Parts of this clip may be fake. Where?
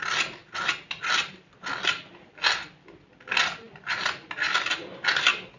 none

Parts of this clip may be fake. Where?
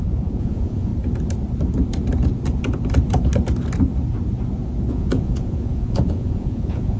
0.0-0.9 (vocoder, Vocos); 4.9-7.0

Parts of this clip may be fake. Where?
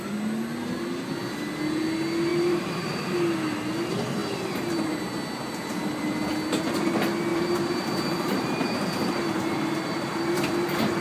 2.3-3.0 (vocoder, BigVGAN v2); 7.3-11.0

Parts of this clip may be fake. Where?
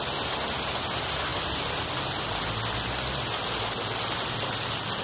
none